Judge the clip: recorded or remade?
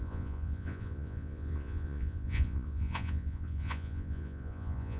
remade